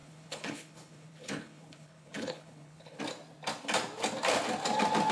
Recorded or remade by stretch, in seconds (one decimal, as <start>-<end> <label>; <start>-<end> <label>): 0.0-3.0 remade; 3.0-5.1 recorded